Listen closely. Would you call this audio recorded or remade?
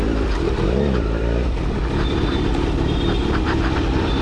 remade